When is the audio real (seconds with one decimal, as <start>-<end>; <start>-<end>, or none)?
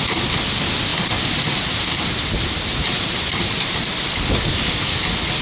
0.0-0.9; 3.8-5.4